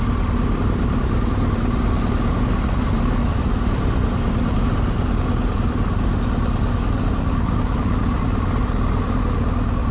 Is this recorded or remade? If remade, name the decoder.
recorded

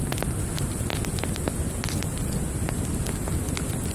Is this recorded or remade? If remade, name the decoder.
recorded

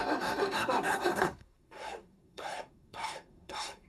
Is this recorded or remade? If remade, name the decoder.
remade, codec, SNAC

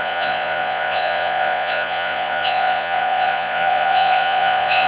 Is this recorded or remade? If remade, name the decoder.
remade, vocoder, Vocos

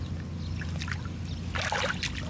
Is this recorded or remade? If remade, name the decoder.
recorded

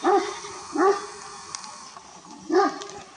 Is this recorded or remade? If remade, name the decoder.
recorded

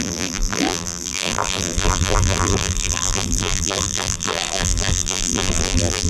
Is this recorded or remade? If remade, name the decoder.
remade, vocoder, BigVGAN v2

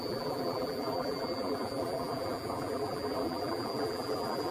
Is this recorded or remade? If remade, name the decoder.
remade, vocoder, BigVGAN v2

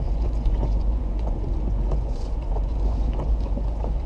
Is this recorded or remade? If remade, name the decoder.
remade, vocoder, Vocos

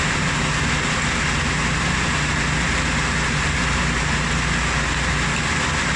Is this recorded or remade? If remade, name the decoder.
recorded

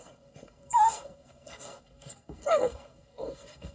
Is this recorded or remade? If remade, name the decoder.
remade, codec, SNAC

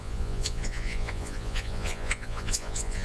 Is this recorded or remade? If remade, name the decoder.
remade, vocoder, Vocos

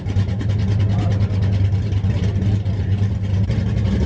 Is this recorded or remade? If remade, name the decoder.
recorded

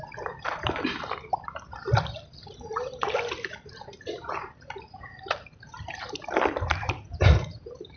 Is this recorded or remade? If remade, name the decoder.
remade, vocoder, BigVGAN v2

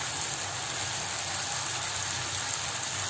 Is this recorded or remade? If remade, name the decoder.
recorded